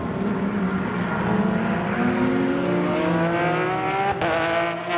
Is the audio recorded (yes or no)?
yes